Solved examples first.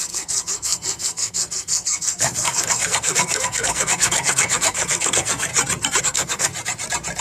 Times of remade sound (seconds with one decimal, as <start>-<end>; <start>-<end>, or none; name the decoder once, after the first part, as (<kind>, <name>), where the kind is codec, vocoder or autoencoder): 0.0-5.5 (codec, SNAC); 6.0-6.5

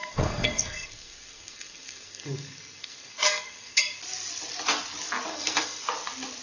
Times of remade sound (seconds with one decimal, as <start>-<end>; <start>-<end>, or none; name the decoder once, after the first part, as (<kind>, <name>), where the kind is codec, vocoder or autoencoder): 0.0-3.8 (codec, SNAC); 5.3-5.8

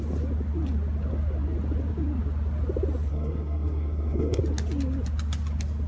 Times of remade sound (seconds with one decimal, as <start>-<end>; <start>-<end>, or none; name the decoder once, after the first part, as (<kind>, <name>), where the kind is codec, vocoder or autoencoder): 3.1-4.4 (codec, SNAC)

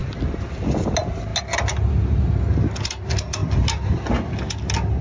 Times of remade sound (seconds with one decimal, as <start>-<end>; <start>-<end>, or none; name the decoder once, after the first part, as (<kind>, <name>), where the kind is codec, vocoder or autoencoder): none